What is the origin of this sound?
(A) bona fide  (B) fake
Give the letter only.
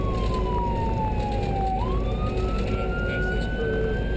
A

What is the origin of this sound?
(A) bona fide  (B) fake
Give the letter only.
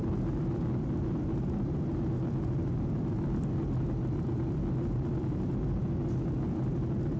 A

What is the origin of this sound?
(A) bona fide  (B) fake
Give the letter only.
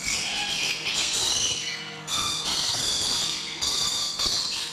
B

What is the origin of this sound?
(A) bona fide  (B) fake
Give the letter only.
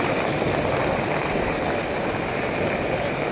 A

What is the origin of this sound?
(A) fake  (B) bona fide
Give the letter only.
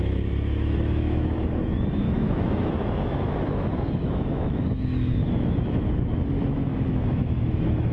A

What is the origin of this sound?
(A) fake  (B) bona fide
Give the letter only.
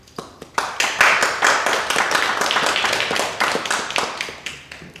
B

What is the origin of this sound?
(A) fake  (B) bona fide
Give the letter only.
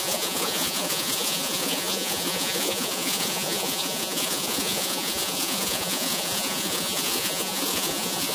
A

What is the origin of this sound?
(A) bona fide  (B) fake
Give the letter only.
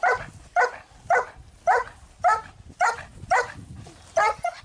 A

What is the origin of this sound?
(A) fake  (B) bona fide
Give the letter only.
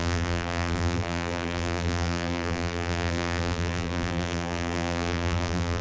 A